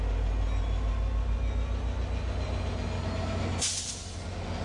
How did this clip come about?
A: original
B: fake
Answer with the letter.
A